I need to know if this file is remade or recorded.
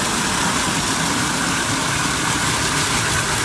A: recorded